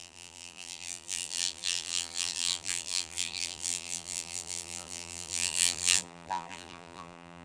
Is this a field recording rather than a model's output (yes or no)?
no